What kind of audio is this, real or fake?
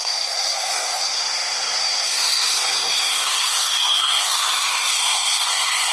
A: fake